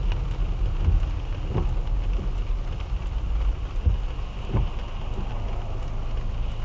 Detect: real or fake real